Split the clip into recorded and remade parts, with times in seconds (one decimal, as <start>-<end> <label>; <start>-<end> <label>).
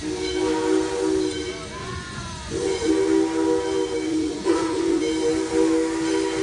0.0-1.8 recorded; 1.8-2.9 remade; 2.9-4.1 recorded; 4.1-5.0 remade; 5.0-6.4 recorded